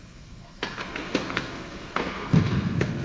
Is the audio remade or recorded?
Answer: remade